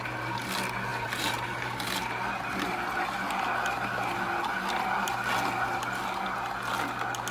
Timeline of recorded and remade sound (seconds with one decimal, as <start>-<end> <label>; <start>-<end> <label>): 0.0-0.9 recorded; 0.9-2.0 remade; 2.0-7.3 recorded